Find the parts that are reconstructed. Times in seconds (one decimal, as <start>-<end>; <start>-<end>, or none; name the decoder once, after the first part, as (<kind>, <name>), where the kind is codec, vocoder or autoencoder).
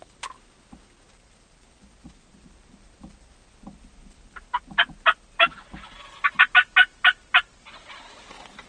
none